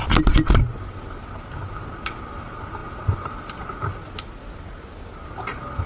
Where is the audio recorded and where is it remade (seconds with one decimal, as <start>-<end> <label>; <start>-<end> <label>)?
0.0-5.9 recorded